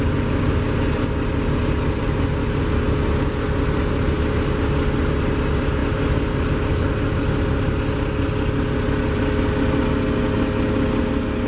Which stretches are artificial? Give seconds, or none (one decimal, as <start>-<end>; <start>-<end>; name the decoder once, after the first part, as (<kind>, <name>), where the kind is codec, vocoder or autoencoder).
none